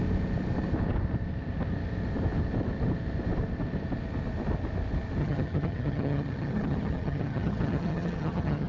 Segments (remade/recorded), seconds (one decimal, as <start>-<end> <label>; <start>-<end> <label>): 0.0-5.2 recorded; 5.2-8.7 remade